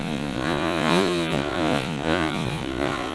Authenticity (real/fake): fake